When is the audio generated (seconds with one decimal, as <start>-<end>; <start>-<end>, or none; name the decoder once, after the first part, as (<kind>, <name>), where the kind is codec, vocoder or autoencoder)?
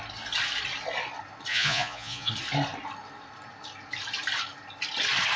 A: 1.5-2.3 (vocoder, Vocos)